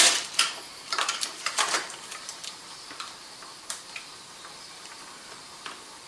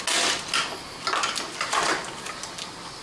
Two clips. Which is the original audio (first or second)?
second